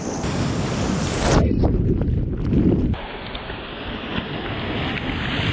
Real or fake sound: real